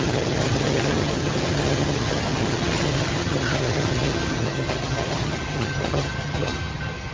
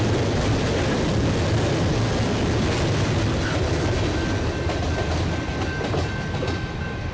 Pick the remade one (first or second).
first